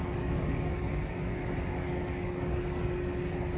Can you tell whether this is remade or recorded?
remade